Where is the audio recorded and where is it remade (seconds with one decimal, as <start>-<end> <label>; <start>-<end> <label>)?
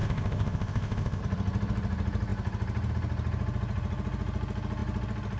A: 0.0-1.2 remade; 1.2-5.4 recorded